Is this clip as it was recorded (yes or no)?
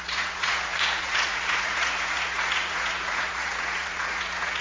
no